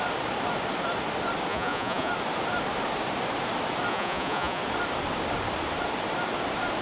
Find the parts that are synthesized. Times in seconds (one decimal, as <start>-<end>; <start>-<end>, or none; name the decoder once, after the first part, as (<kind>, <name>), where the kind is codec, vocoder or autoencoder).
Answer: 1.5-2.1 (vocoder, Vocos); 3.9-4.6